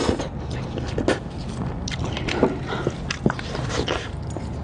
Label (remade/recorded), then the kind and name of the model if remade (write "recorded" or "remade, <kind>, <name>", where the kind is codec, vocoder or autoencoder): recorded